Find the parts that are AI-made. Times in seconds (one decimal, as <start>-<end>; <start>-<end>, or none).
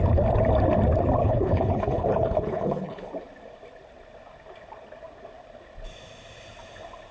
1.2-3.1